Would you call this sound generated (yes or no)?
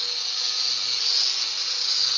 no